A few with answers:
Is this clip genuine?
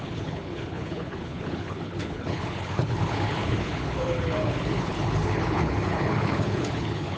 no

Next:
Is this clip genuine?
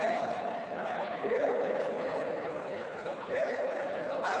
no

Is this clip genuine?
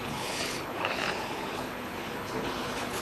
no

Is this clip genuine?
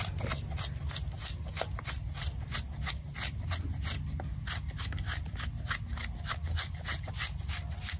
yes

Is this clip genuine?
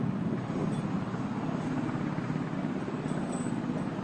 yes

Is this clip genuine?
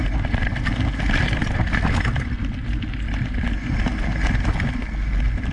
yes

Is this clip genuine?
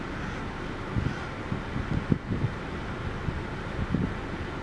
yes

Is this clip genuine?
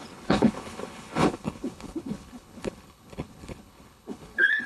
no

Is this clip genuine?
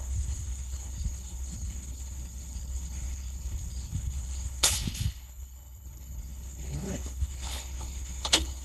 no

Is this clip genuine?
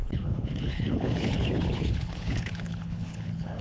no